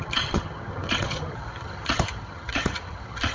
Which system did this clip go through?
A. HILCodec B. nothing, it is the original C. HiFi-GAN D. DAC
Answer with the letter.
C